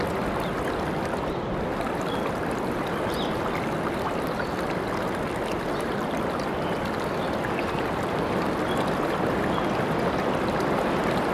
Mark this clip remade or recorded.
recorded